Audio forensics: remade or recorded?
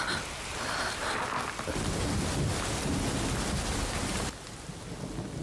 recorded